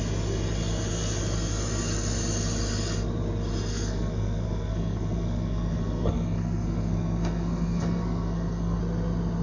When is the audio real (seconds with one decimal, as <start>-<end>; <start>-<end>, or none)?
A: 0.0-3.7; 8.8-9.4